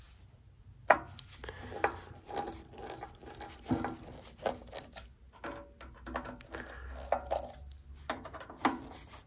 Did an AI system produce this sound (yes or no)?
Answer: no